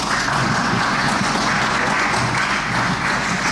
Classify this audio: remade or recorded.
remade